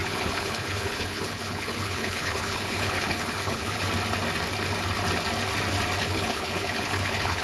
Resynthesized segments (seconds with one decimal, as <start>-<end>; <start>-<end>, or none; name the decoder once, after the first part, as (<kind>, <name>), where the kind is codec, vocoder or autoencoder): 0.0-3.9 (codec, HILCodec); 6.0-7.4